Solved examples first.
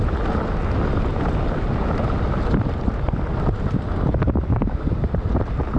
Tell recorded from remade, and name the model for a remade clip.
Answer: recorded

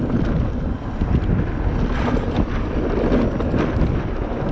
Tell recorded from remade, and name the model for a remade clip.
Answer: recorded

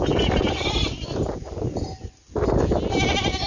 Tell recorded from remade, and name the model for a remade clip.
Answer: recorded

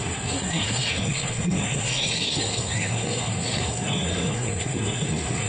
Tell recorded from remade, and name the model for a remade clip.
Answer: remade, codec, SNAC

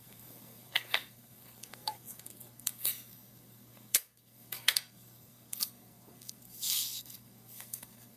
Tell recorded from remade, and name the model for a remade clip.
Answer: remade, codec, SNAC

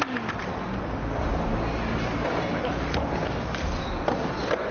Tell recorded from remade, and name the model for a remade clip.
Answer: recorded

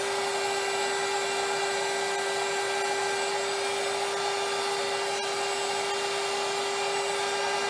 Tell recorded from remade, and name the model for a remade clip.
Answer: recorded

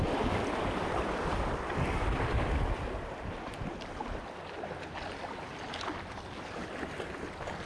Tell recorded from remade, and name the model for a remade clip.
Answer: recorded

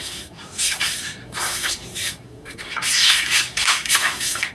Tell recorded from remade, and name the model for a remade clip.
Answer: remade, codec, SNAC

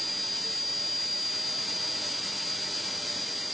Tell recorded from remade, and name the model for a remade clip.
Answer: recorded